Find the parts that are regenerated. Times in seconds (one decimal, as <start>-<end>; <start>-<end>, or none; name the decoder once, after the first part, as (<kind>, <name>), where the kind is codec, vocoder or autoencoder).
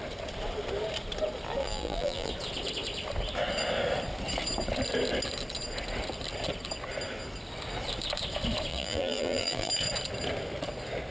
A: 1.6-2.3 (vocoder, BigVGAN v2); 8.7-9.7